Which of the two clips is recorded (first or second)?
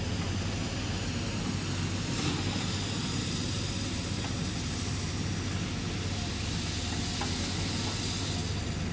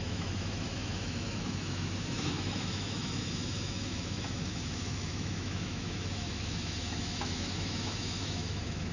first